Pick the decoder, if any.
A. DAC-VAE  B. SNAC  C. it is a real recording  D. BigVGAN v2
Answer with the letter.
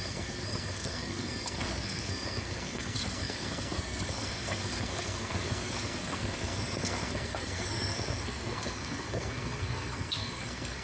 B